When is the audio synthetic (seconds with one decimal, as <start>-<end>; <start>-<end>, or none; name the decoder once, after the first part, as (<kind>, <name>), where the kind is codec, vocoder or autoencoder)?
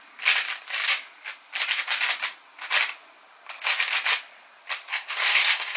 4.9-5.8 (codec, SNAC)